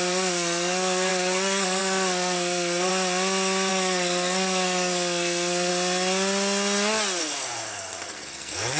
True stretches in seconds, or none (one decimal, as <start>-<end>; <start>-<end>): 2.9-3.7; 5.7-7.2